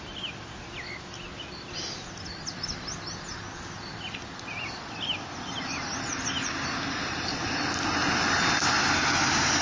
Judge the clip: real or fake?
real